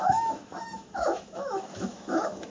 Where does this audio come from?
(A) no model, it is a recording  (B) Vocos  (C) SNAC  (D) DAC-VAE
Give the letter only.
D